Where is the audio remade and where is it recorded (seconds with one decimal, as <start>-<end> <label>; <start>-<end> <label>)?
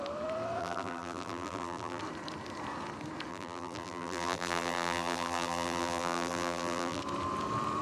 0.0-0.6 recorded; 0.6-2.0 remade; 2.0-3.3 recorded; 3.3-7.0 remade; 7.0-7.8 recorded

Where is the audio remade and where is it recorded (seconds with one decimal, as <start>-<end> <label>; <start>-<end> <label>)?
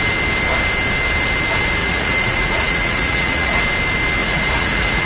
0.0-1.8 recorded; 1.8-3.6 remade; 3.6-4.2 recorded; 4.2-5.1 remade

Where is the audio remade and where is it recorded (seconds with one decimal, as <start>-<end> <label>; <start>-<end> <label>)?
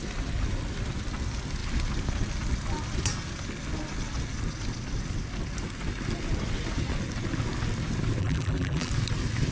0.0-8.2 recorded; 8.2-8.9 remade; 8.9-9.5 recorded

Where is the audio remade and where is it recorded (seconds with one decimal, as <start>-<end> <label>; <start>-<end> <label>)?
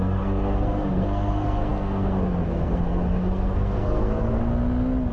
0.0-4.4 remade; 4.4-5.1 recorded